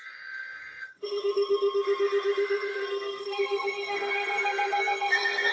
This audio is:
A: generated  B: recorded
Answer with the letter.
A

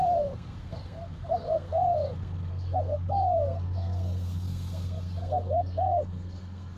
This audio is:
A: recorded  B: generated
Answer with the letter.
B